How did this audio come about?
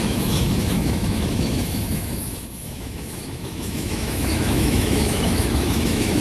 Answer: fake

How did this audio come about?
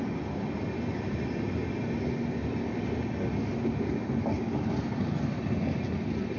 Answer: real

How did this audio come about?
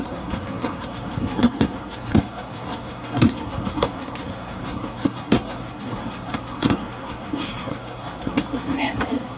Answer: fake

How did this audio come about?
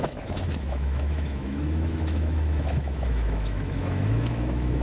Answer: fake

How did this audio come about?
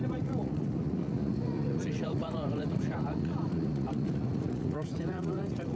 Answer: fake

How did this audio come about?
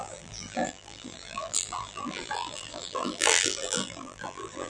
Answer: fake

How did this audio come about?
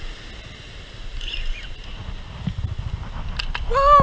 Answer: real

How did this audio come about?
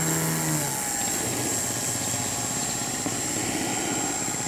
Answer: real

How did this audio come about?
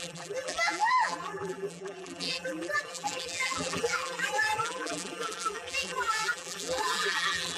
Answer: fake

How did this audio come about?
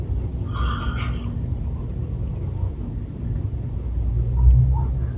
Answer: real